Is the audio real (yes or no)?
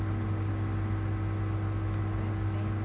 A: yes